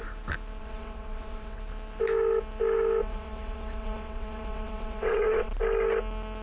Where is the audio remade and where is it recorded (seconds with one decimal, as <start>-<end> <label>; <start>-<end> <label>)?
0.0-0.6 recorded; 0.6-1.6 remade; 1.6-3.0 recorded; 3.0-5.5 remade; 5.5-6.4 recorded